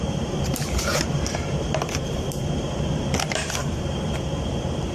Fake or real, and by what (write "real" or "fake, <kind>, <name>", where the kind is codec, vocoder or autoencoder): fake, vocoder, BigVGAN v2